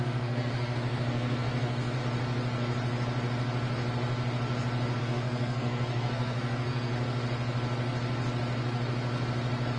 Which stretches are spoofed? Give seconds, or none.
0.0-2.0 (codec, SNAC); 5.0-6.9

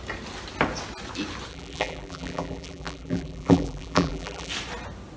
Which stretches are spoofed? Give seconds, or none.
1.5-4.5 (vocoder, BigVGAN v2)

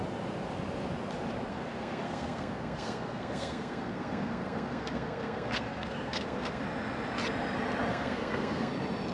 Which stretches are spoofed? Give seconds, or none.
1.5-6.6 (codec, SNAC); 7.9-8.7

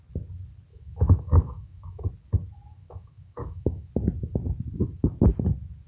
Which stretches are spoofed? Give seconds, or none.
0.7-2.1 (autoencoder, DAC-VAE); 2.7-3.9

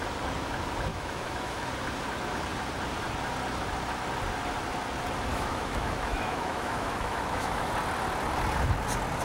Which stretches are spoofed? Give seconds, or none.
0.9-1.7 (autoencoder, DAC-VAE); 5.3-7.7

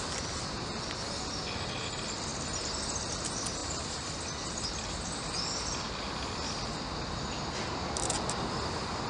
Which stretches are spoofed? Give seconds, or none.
none